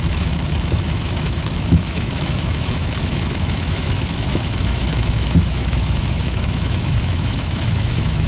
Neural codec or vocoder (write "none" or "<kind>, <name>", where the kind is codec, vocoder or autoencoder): autoencoder, DAC-VAE